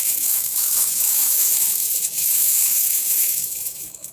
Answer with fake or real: fake